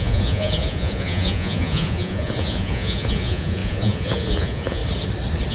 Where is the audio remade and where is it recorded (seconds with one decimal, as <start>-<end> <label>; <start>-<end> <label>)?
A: 0.0-4.8 remade; 4.8-5.5 recorded